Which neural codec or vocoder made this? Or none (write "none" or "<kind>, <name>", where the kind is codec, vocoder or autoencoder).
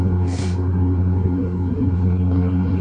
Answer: codec, SNAC